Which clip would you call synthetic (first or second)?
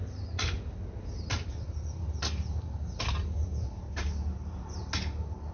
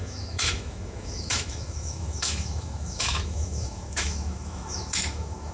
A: second